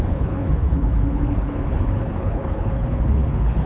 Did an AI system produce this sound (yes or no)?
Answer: yes